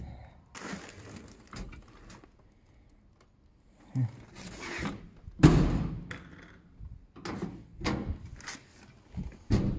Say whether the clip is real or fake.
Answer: real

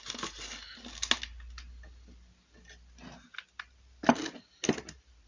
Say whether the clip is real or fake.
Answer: real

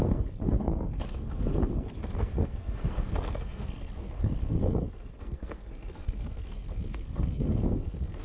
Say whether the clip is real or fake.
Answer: fake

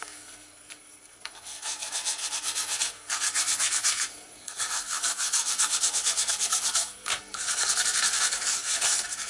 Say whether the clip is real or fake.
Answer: fake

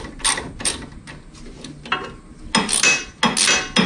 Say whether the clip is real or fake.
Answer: real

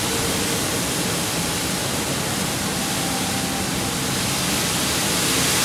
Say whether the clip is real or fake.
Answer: real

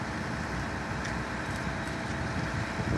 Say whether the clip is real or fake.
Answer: real